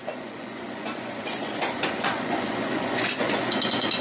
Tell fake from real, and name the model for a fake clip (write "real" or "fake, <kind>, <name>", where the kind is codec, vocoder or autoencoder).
fake, vocoder, Vocos